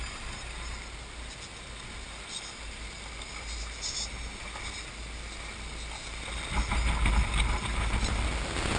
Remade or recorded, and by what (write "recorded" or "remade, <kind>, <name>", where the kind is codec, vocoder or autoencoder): recorded